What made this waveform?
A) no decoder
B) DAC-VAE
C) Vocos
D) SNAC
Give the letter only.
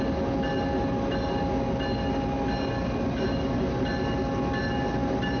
A